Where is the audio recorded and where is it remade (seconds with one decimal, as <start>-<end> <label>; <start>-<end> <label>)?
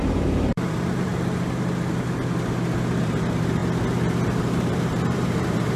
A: 0.0-1.1 remade; 1.1-3.0 recorded; 3.0-3.6 remade; 3.6-4.4 recorded; 4.4-5.8 remade